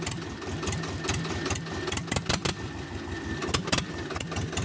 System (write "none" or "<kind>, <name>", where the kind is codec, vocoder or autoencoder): none